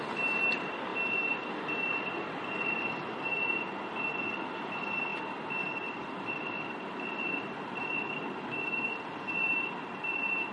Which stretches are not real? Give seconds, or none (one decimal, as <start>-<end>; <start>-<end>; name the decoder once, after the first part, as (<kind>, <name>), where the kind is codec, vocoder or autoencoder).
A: none